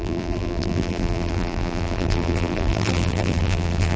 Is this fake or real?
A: fake